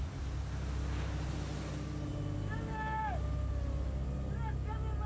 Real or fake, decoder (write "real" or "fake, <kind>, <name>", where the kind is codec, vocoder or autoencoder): real